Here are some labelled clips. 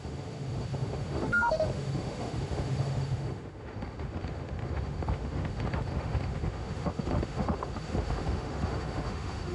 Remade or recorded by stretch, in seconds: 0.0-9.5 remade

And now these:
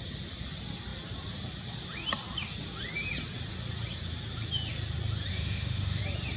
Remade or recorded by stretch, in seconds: 0.0-5.3 recorded; 5.3-6.0 remade; 6.0-6.4 recorded

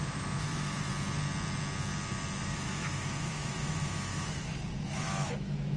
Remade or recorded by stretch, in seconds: 0.0-0.9 remade; 0.9-2.4 recorded; 2.4-5.8 remade